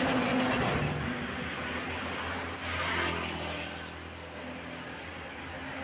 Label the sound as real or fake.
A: real